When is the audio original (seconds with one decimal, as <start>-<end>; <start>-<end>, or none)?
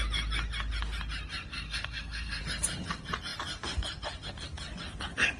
0.0-1.5; 2.4-5.4